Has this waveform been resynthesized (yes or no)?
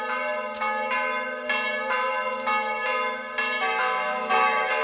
no